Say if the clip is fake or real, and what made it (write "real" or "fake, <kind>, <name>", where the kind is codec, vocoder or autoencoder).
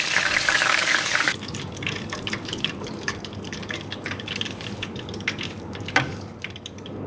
fake, codec, DAC